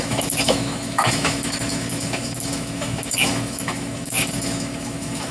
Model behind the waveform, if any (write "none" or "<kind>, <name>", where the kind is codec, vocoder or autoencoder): autoencoder, DAC-VAE